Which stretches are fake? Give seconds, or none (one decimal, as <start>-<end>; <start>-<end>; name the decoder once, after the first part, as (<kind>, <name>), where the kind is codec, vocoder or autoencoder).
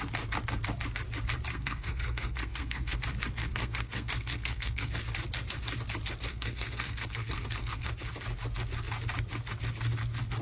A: 1.5-3.0 (codec, SNAC); 3.4-4.9; 6.3-7.9